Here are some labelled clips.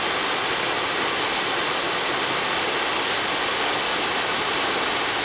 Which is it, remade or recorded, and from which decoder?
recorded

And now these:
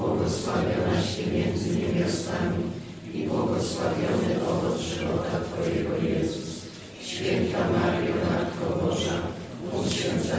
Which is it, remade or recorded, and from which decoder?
recorded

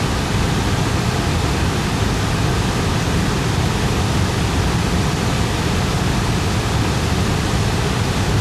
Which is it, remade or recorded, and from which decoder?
recorded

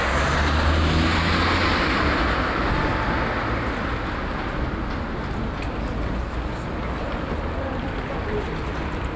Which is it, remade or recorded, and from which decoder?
recorded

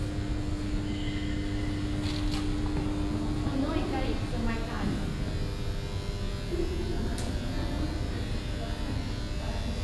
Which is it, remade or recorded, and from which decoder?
recorded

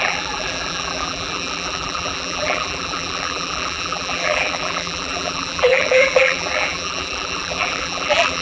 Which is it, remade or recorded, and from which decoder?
remade, vocoder, BigVGAN v2